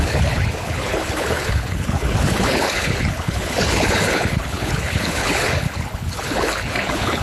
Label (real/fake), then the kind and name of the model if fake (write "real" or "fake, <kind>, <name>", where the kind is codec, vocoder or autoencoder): fake, codec, HILCodec